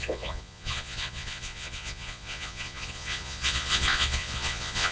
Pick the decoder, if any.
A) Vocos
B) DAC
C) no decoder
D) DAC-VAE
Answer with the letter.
A